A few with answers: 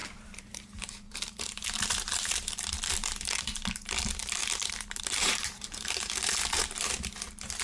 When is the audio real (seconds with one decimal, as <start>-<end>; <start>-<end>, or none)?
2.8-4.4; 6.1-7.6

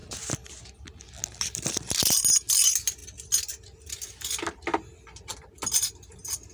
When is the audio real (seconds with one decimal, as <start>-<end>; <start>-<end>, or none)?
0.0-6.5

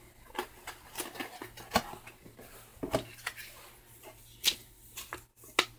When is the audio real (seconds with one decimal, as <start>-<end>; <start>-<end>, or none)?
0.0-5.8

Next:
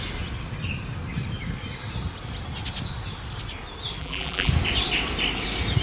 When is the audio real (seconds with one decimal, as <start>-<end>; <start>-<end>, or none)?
0.0-4.0; 4.5-5.8

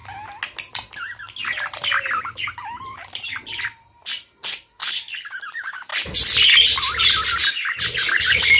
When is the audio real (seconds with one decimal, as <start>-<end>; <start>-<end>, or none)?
0.0-2.2; 4.8-5.4; 5.9-8.2

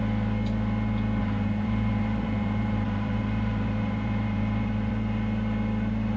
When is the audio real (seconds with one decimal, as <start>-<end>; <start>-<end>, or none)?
0.0-1.2; 4.9-6.2